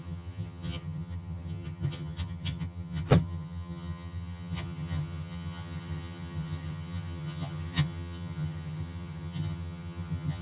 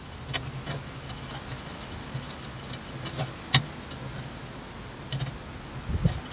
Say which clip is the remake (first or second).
first